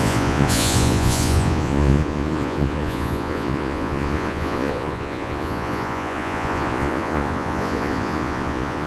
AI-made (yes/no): yes